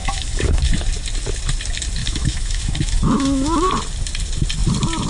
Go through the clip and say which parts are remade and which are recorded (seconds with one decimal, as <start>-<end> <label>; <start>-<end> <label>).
0.0-0.7 remade; 0.7-2.0 recorded; 2.0-3.7 remade; 3.7-5.1 recorded